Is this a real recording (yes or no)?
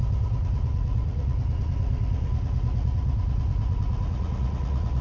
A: no